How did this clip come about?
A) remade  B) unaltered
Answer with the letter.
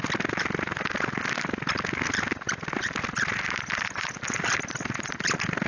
B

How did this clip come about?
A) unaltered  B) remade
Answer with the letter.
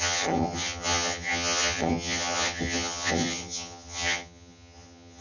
B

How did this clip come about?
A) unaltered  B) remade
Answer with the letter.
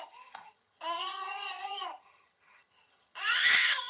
B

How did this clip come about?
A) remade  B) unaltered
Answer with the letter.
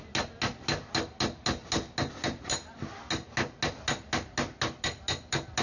B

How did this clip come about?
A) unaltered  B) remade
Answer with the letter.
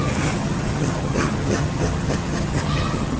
B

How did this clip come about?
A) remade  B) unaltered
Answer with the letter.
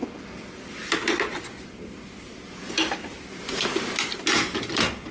B